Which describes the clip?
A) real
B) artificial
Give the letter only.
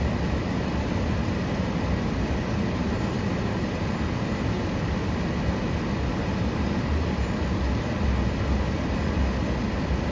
A